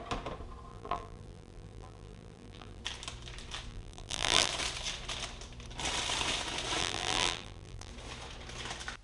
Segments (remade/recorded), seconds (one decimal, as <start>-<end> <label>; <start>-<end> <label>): 0.0-0.7 recorded; 0.7-2.8 remade; 2.8-3.7 recorded; 3.7-4.5 remade; 4.5-6.8 recorded; 6.8-7.9 remade; 7.9-9.0 recorded